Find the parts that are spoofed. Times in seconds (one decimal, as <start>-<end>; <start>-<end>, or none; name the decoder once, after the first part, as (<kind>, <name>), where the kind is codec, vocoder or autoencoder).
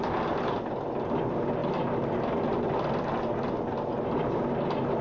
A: none